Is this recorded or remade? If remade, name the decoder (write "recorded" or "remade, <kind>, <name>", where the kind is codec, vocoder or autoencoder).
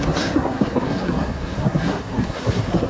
remade, codec, SNAC